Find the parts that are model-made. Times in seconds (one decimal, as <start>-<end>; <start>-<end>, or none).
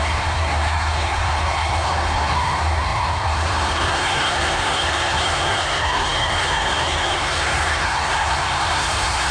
0.0-9.3